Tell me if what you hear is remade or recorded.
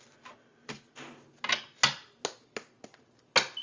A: recorded